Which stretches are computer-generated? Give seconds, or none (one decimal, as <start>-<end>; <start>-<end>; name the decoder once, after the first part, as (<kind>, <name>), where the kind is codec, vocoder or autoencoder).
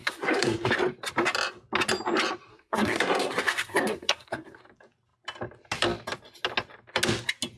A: 0.0-0.7 (codec, SNAC); 2.5-4.6